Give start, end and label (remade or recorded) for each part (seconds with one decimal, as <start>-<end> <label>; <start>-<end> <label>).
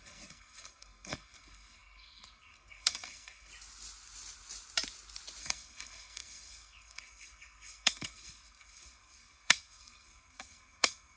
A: 0.0-3.5 remade; 3.5-5.4 recorded; 5.4-11.2 remade